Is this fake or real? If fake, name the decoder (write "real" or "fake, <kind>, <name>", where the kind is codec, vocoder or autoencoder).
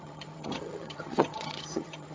fake, vocoder, HiFi-GAN